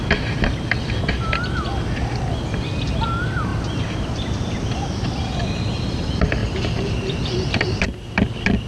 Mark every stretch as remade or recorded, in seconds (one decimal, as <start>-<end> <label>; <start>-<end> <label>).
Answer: 0.0-8.7 remade